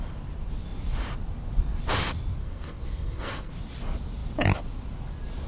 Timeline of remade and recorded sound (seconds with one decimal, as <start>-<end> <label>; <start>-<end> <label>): 0.0-2.4 recorded; 2.4-3.5 remade; 3.5-5.5 recorded